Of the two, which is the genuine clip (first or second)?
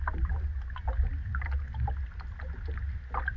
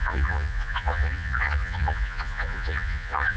first